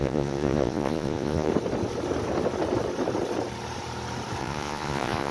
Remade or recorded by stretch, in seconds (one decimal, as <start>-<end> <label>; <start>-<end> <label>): 0.0-1.5 remade; 1.5-4.4 recorded; 4.4-5.3 remade